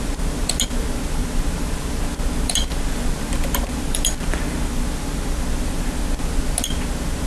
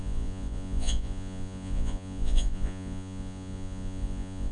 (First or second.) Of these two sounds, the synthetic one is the second